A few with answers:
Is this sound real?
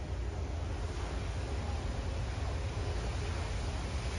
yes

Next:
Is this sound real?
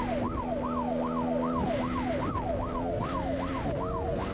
yes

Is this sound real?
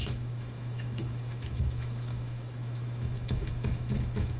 no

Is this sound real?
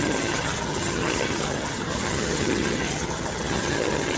no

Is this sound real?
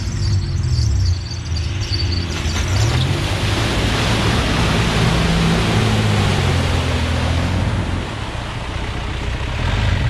yes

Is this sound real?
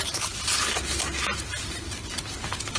yes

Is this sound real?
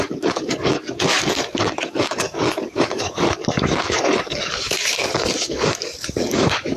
no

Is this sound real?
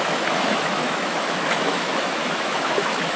no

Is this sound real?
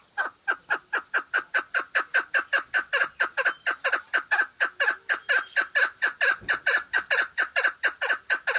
yes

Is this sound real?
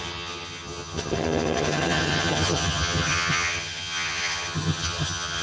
no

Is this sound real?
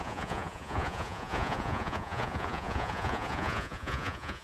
no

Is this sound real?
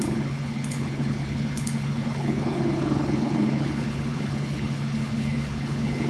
no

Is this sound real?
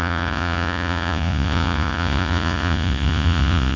no